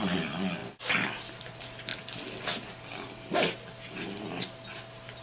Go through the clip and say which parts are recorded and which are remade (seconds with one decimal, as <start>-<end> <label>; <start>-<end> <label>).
0.0-5.2 recorded